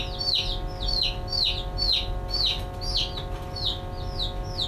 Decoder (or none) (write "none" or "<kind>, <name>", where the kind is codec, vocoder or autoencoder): none